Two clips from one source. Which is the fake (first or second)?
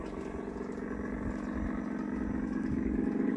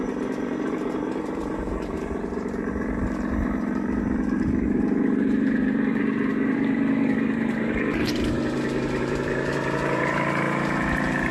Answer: second